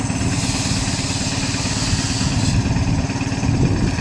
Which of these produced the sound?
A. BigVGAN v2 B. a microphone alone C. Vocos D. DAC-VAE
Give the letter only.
B